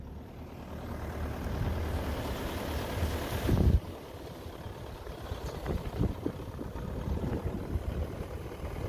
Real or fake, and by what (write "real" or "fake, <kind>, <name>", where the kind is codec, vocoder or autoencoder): fake, vocoder, BigVGAN v2